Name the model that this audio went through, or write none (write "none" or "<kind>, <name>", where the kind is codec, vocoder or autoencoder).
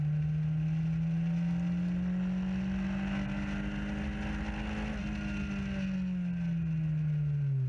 none